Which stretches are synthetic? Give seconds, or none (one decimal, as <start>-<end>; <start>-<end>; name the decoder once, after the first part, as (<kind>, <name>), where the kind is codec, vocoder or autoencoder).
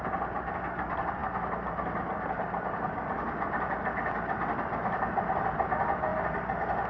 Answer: none